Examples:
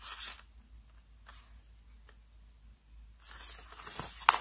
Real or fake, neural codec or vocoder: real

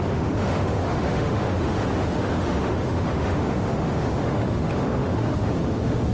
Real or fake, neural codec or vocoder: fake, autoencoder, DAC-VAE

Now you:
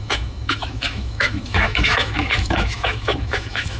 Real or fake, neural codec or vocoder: fake, autoencoder, DAC-VAE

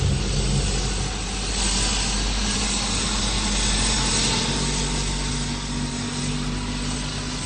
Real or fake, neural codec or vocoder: real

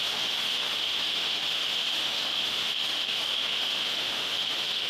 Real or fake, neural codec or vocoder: fake, autoencoder, DAC-VAE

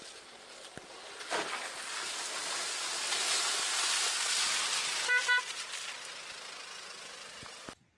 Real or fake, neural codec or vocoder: real